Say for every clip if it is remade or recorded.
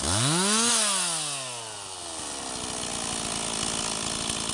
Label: recorded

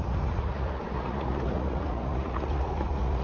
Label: remade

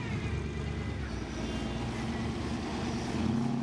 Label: recorded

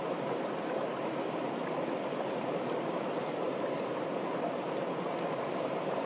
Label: recorded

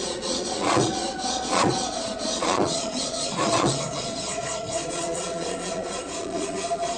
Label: remade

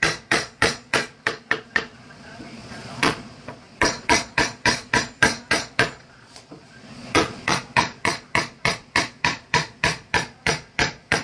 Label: remade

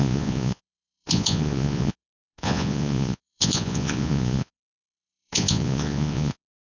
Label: remade